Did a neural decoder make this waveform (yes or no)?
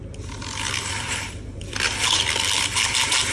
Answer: yes